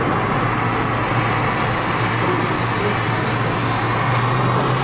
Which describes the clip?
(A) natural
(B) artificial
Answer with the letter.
A